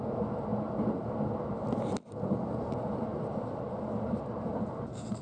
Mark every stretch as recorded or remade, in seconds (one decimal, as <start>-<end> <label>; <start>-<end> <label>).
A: 0.0-5.2 recorded